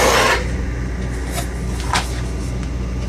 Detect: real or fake real